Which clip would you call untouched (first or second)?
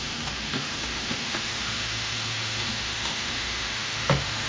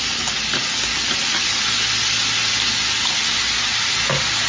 second